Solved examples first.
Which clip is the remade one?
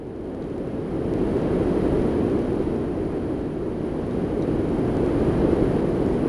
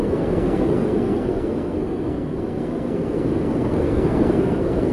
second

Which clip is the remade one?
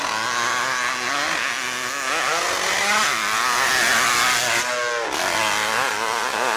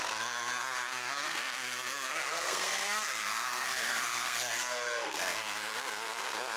second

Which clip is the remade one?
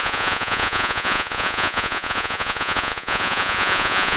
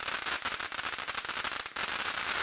first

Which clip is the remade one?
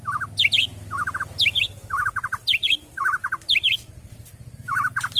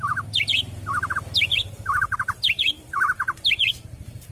second